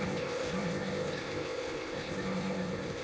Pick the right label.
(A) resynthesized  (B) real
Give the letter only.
A